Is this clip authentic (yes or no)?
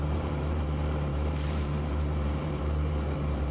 no